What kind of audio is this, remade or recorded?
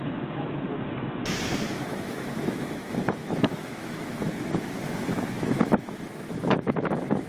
remade